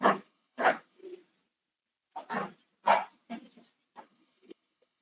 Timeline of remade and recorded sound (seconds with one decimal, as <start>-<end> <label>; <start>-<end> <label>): 0.0-1.0 remade; 1.0-4.0 recorded; 4.0-5.0 remade